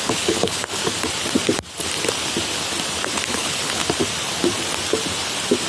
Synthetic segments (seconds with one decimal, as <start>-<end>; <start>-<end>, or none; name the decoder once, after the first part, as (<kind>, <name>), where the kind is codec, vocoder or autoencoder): 0.0-0.8 (codec, HILCodec); 3.3-3.8